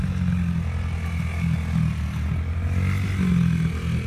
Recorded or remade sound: recorded